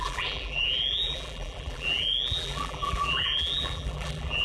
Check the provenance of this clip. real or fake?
fake